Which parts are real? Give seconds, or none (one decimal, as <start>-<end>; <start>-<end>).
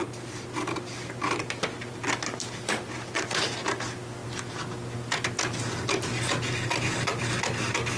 0.0-8.0